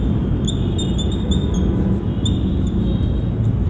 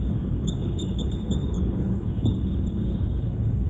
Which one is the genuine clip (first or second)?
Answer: first